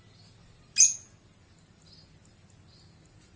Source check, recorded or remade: recorded